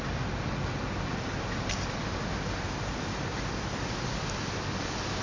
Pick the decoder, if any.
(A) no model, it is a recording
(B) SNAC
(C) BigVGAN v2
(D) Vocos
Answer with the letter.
A